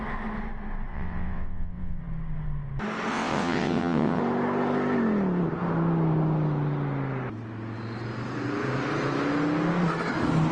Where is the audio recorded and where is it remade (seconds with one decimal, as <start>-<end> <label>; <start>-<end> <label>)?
0.0-0.9 recorded; 0.9-2.0 remade; 2.0-3.1 recorded; 3.1-4.2 remade; 4.2-10.5 recorded